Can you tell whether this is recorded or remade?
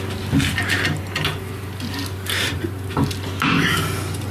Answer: recorded